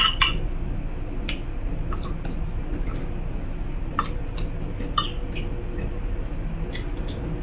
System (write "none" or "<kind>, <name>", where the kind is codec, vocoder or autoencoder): none